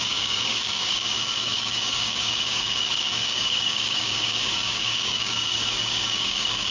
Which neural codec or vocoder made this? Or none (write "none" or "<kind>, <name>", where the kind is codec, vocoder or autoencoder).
codec, DAC